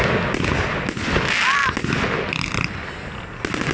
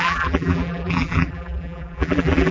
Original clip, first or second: first